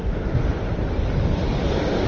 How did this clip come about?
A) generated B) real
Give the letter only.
B